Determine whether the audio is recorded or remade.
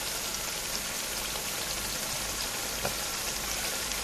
recorded